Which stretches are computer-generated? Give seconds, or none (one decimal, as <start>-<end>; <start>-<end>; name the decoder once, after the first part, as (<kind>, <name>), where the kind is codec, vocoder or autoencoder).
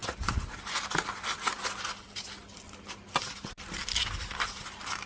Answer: none